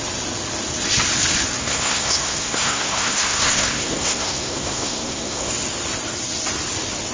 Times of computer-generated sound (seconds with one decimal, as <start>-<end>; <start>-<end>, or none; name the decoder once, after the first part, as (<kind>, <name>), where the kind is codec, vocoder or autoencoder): 1.6-5.5 (codec, SNAC)